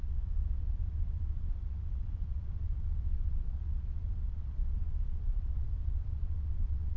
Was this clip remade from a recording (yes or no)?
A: yes